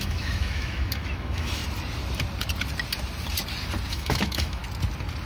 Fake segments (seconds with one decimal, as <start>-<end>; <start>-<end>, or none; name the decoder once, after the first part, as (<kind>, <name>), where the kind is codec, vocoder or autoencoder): 0.0-1.6 (autoencoder, DAC-VAE); 3.9-4.6